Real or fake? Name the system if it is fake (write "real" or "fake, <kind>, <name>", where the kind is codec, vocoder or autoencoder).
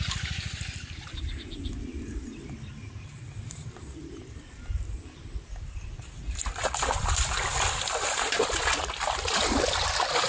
fake, vocoder, BigVGAN v2